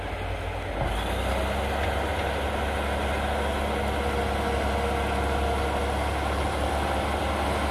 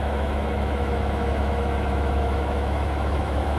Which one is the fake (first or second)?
second